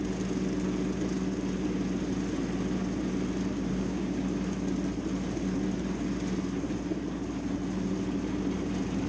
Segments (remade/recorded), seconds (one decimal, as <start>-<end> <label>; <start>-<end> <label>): 0.0-3.7 recorded; 3.7-4.2 remade; 4.2-9.1 recorded